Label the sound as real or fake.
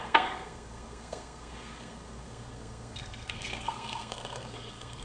fake